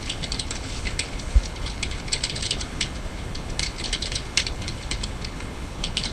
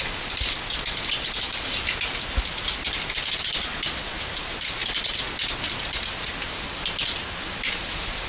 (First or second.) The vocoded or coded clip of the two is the first